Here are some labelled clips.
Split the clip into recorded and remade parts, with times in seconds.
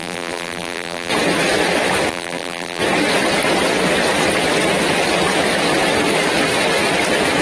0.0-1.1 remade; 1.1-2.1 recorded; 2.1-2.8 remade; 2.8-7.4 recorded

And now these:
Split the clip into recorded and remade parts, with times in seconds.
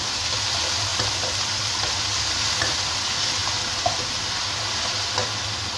0.0-0.9 recorded; 0.9-1.6 remade; 1.6-5.8 recorded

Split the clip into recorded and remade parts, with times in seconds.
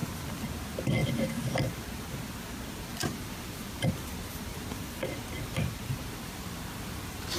0.0-0.6 remade; 0.6-1.0 recorded; 1.0-1.7 remade; 1.7-2.9 recorded; 2.9-7.4 remade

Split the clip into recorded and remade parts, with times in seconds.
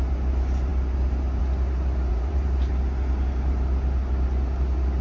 0.0-2.1 recorded; 2.1-2.7 remade; 2.7-5.0 recorded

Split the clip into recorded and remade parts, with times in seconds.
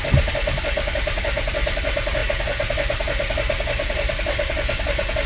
0.0-5.3 recorded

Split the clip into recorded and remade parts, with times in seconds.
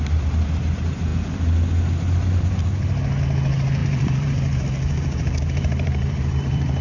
0.0-3.8 recorded; 3.8-6.8 remade